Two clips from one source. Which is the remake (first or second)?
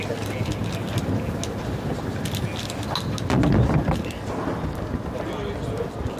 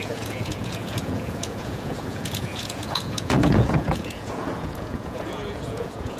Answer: second